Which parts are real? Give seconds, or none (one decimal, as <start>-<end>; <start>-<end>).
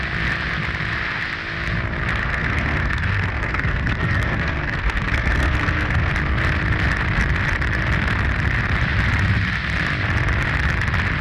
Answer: 0.0-2.2; 6.1-11.2